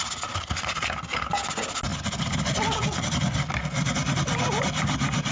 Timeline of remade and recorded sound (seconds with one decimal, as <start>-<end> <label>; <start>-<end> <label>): 0.0-1.9 recorded; 1.9-3.5 remade; 3.5-5.3 recorded